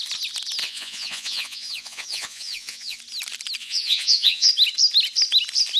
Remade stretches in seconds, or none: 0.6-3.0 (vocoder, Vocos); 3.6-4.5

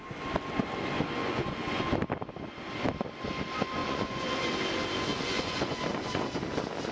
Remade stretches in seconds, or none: 1.2-1.9 (vocoder, Vocos); 3.8-4.5; 5.1-6.4

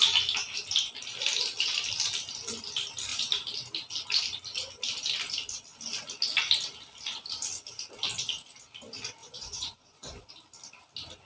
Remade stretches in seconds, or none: 9.2-10.2 (vocoder, Vocos)

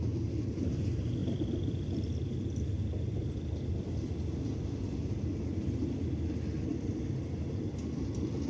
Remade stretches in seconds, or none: none

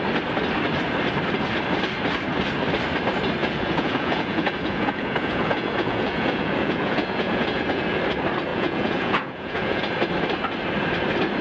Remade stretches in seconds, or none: 3.4-8.0 (vocoder, Vocos); 8.5-9.9

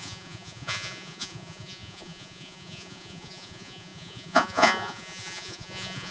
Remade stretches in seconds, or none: 0.0-6.1 (vocoder, Vocos)

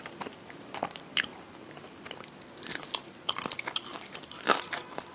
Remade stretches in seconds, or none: none

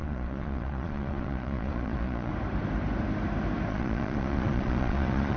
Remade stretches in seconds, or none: 0.0-2.3 (vocoder, Vocos); 3.7-5.4